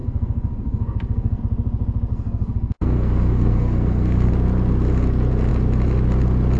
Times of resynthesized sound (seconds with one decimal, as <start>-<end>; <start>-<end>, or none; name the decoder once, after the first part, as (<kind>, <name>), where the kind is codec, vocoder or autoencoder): 0.0-1.4 (codec, SNAC); 2.1-4.3